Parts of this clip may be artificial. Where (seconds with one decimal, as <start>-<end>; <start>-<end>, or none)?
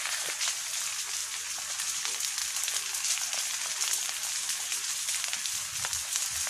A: 2.4-4.3; 4.7-6.5